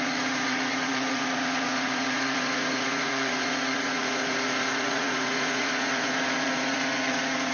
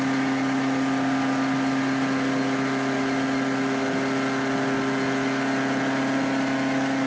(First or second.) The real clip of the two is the second